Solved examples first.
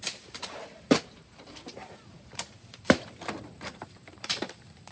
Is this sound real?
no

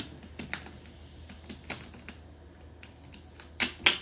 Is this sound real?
yes